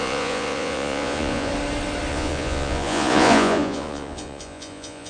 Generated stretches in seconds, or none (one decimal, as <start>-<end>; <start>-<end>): 0.0-1.5; 2.1-5.1